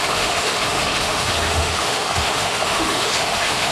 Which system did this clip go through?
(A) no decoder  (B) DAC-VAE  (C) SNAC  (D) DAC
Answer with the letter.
B